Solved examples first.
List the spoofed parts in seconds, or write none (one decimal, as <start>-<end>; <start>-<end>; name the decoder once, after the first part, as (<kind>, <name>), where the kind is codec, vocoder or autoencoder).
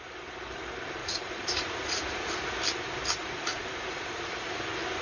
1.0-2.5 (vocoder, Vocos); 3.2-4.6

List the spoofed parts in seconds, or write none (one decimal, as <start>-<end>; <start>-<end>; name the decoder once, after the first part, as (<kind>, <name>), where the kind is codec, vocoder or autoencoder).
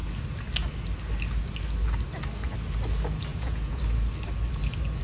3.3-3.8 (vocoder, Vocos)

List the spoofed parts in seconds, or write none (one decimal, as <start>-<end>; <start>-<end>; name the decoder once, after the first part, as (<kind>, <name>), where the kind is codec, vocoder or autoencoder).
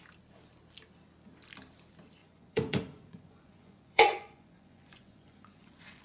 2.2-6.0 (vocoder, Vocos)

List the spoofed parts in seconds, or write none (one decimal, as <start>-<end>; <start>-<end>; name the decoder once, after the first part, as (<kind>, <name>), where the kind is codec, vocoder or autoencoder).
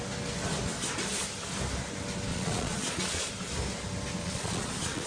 2.3-3.3 (vocoder, Vocos); 4.2-5.1